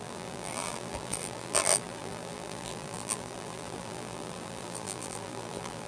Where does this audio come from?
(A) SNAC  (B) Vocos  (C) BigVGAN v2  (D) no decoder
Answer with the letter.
C